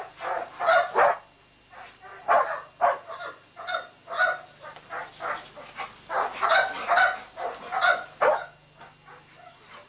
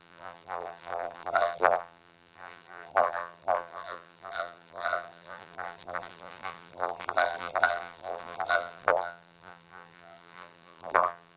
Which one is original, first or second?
first